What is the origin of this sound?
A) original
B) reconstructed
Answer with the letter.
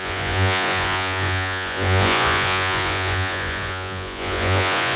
B